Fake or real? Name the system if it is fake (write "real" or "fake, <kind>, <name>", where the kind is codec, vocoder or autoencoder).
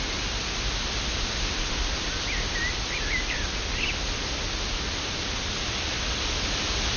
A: real